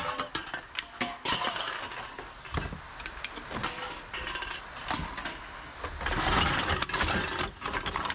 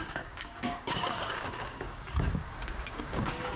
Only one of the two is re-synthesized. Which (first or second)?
second